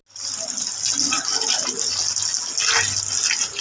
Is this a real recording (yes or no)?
yes